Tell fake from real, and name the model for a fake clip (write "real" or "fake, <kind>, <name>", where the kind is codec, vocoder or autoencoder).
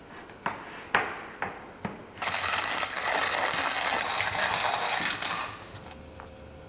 real